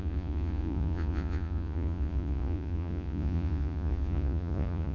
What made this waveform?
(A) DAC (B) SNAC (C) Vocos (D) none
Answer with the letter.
C